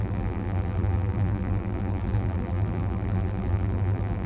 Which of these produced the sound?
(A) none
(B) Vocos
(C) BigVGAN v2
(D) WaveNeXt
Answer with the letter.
C